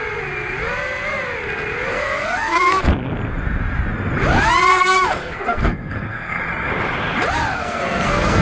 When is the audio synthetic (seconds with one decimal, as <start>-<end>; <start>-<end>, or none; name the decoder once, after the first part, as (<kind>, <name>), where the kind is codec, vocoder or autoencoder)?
1.9-2.9 (codec, SNAC); 4.7-6.4; 7.5-8.4